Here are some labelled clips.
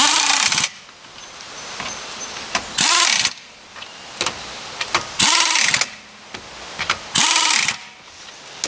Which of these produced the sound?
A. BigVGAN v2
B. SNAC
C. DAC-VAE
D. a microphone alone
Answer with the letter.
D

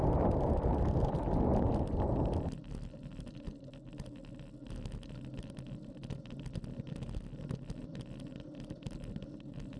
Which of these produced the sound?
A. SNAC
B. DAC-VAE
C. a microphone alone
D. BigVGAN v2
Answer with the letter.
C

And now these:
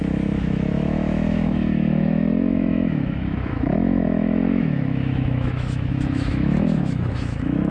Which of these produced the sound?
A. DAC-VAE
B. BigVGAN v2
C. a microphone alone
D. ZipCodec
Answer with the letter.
A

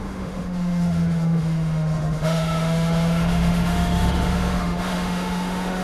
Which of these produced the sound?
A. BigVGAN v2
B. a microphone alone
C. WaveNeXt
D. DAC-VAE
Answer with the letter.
D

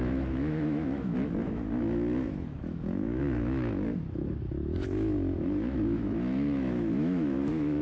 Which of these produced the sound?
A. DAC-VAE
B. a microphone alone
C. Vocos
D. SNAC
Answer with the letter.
A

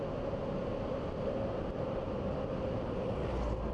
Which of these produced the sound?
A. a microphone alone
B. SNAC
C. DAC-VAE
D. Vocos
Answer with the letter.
A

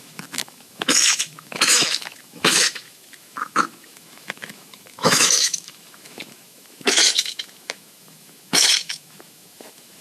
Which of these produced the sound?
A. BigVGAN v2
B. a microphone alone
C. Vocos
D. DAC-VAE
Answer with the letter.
D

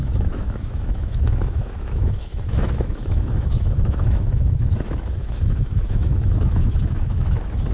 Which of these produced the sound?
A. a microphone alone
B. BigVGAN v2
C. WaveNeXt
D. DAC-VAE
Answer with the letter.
D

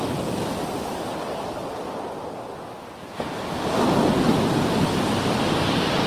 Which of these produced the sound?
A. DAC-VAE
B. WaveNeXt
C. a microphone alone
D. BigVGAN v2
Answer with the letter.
C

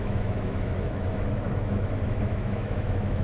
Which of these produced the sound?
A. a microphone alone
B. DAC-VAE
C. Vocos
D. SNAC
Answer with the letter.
B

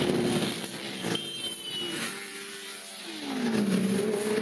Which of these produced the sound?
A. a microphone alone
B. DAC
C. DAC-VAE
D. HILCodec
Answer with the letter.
A